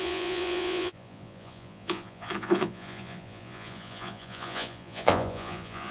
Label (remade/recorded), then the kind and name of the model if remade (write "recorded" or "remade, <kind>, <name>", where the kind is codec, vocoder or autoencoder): remade, vocoder, Vocos